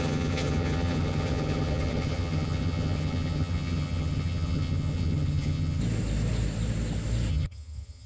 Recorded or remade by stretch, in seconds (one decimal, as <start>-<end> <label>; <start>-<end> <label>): 0.0-5.8 remade; 5.8-7.3 recorded; 7.3-8.1 remade